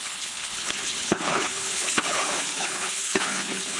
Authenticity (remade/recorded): remade